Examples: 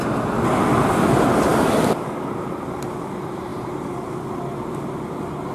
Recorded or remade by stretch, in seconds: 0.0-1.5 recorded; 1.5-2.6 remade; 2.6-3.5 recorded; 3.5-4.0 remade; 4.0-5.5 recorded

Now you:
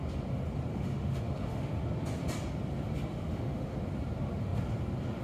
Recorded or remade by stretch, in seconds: 0.0-0.7 recorded; 0.7-1.7 remade; 1.7-3.1 recorded; 3.1-3.8 remade; 3.8-5.2 recorded